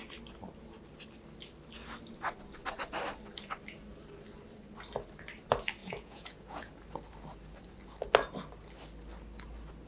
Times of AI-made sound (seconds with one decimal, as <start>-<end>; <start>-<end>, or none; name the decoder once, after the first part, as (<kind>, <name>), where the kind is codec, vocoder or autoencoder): 5.8-6.7 (vocoder, Vocos)